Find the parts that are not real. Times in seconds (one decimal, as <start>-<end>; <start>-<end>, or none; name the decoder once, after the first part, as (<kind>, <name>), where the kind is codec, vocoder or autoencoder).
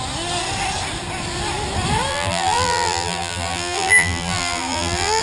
2.1-5.2 (vocoder, BigVGAN v2)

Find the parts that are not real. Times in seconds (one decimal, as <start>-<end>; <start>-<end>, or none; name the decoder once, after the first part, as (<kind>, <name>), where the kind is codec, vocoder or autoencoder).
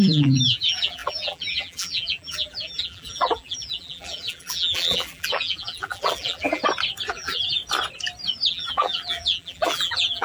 0.0-6.6 (vocoder, BigVGAN v2); 7.1-7.6; 8.5-10.2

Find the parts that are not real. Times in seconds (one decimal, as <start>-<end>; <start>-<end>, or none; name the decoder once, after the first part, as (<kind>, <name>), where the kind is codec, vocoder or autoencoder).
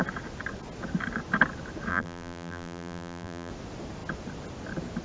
1.9-3.5 (vocoder, BigVGAN v2)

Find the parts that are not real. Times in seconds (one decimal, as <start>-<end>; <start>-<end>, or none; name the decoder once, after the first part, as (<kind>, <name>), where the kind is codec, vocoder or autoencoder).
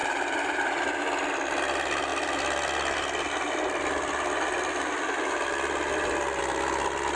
0.0-1.0 (vocoder, BigVGAN v2)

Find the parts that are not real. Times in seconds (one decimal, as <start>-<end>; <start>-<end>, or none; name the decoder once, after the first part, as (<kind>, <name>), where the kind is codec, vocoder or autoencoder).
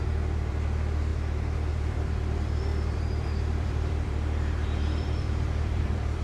0.0-1.1 (vocoder, BigVGAN v2); 1.7-6.2